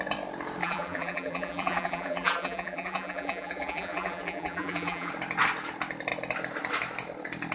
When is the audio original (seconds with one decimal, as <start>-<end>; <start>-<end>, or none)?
0.0-0.6; 5.1-7.5